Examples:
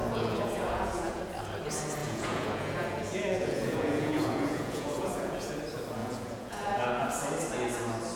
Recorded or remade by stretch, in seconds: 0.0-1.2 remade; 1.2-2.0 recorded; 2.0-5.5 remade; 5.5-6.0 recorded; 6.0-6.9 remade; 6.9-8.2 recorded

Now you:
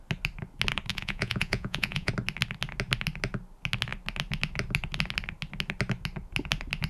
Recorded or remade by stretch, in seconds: 0.0-0.9 recorded; 0.9-2.1 remade; 2.1-6.9 recorded

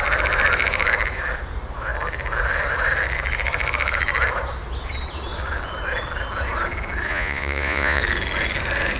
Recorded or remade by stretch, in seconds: 0.0-7.1 recorded; 7.1-8.0 remade; 8.0-9.0 recorded